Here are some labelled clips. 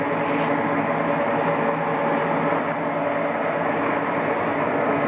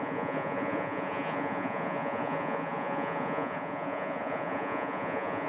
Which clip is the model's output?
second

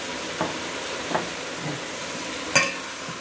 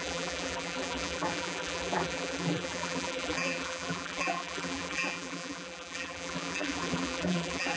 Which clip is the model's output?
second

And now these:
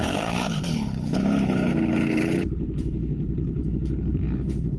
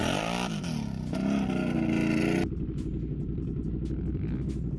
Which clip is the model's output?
first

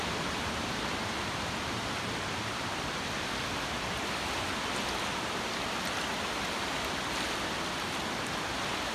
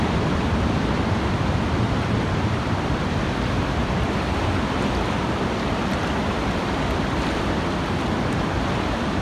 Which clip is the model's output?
second